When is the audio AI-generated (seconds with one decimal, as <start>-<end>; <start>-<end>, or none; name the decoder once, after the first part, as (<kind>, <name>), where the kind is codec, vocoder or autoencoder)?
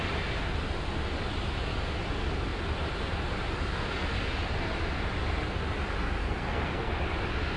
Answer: 6.2-7.0 (codec, SNAC)